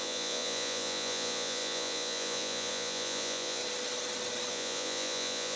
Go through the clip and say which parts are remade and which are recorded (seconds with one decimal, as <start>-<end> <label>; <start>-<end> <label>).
0.0-3.6 remade; 3.6-4.5 recorded; 4.5-5.6 remade